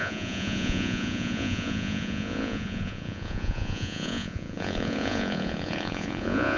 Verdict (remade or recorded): remade